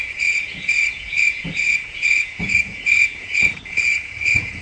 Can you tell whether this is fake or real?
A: fake